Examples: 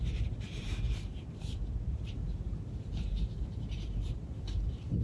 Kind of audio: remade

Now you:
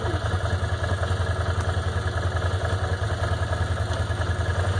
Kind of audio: recorded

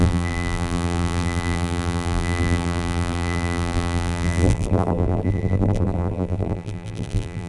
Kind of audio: remade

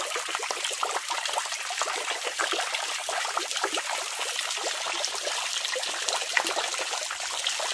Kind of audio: recorded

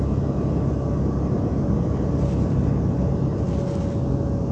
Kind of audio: recorded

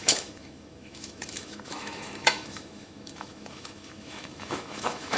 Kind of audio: remade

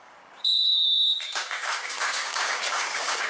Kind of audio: remade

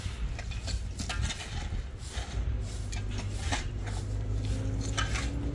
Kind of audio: recorded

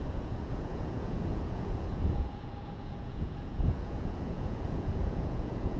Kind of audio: remade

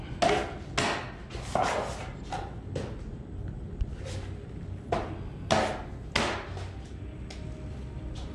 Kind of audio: recorded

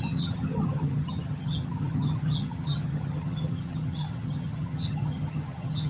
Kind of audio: remade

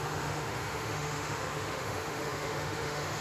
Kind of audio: remade